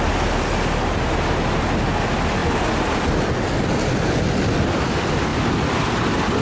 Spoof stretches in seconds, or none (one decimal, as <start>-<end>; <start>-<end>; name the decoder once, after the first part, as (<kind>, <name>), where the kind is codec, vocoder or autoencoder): 5.3-6.0 (vocoder, BigVGAN v2)